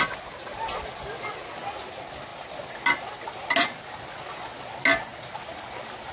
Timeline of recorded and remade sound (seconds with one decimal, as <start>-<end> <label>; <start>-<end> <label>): 0.0-6.1 recorded